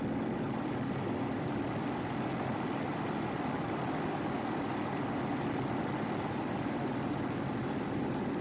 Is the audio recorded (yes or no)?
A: yes